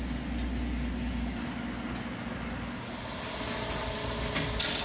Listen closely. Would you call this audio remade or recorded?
recorded